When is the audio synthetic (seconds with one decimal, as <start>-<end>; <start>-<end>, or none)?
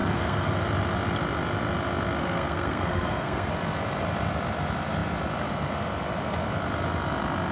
0.0-0.5; 2.2-3.5